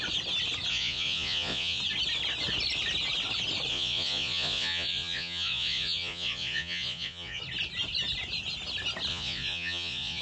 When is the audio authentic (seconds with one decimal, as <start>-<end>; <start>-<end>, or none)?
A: 0.0-0.7; 1.8-3.7; 7.4-9.1